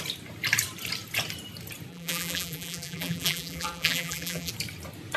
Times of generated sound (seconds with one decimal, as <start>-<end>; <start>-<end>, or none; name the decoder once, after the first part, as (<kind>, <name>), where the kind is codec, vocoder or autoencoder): 1.9-4.5 (vocoder, BigVGAN v2)